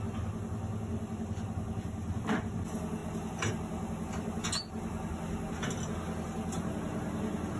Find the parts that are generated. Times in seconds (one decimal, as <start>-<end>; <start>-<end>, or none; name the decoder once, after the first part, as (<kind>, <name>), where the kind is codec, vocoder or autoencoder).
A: none